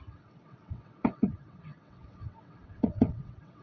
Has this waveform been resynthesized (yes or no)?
yes